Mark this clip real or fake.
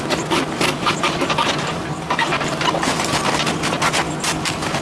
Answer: real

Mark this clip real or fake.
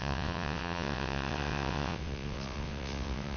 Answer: fake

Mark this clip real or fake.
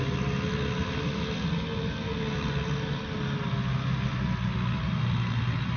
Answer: real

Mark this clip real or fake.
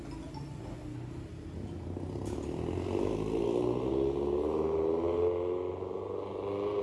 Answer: real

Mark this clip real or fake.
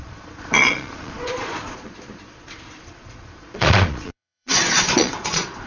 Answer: fake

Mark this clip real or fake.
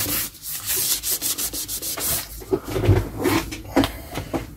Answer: real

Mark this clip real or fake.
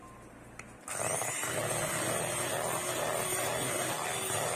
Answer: real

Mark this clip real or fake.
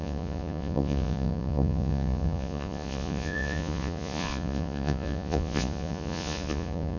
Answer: fake